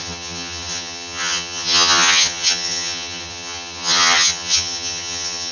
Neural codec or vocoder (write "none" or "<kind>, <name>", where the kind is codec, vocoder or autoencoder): vocoder, HiFi-GAN